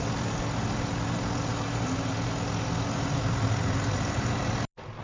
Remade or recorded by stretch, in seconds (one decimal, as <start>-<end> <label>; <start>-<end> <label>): 0.0-5.0 recorded